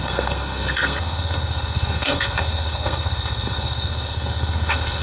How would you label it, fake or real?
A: fake